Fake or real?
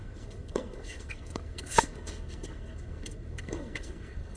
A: fake